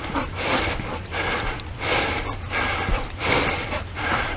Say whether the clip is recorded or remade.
remade